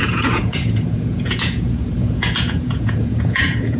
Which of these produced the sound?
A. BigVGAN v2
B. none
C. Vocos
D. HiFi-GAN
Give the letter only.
C